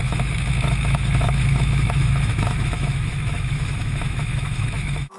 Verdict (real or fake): fake